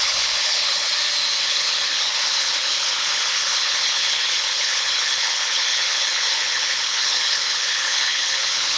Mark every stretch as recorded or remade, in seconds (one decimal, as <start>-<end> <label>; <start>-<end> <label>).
0.0-0.9 remade; 0.9-1.4 recorded; 1.4-8.8 remade

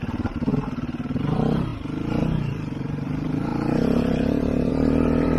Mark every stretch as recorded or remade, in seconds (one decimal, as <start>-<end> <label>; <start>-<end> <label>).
0.0-1.7 remade; 1.7-2.2 recorded; 2.2-5.4 remade

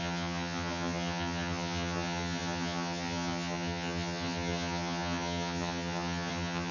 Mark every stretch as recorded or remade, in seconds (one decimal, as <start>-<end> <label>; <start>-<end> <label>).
0.0-6.7 remade

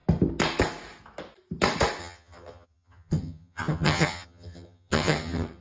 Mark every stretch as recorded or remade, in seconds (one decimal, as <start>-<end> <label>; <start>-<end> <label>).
0.0-2.0 recorded; 2.0-5.6 remade